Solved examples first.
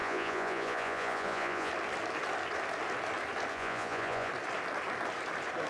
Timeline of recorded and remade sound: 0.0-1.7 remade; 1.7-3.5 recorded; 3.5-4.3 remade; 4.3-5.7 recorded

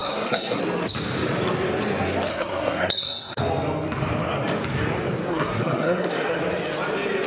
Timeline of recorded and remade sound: 0.0-0.6 remade; 0.6-2.3 recorded; 2.3-3.4 remade; 3.4-5.3 recorded; 5.3-6.4 remade; 6.4-7.3 recorded

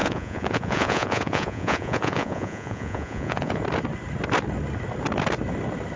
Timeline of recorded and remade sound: 0.0-3.6 remade; 3.6-6.0 recorded

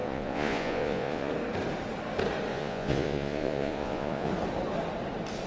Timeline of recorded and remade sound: 0.0-1.3 remade; 1.3-2.5 recorded; 2.5-4.3 remade; 4.3-5.5 recorded

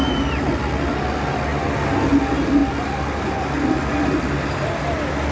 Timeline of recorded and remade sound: 0.0-5.3 recorded

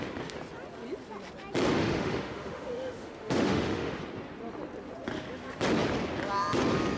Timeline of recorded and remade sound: 0.0-1.8 recorded; 1.8-4.0 remade; 4.0-7.0 recorded